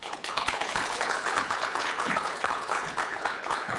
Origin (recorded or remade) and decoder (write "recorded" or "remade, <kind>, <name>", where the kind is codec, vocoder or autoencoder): remade, codec, HILCodec